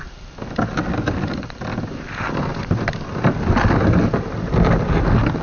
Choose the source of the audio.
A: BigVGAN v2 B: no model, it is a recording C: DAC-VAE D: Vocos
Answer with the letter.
B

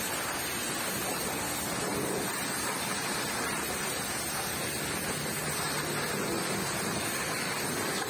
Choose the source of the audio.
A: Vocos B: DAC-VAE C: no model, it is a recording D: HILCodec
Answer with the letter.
C